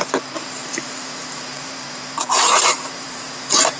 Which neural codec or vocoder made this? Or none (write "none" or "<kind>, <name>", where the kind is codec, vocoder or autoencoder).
vocoder, BigVGAN v2